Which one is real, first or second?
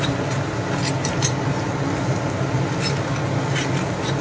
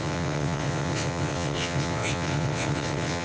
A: first